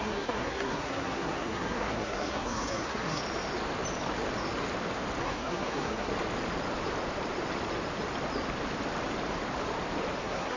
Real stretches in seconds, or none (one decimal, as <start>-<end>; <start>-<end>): 3.2-5.2; 6.1-10.2